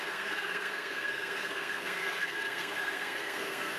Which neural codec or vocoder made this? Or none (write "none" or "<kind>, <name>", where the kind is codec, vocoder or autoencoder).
codec, SNAC